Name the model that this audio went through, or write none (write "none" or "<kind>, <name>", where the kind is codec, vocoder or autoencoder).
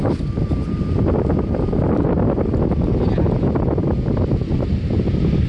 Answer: none